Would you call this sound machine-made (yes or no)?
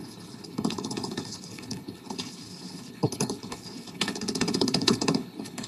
yes